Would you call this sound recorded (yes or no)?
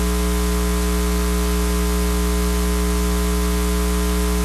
yes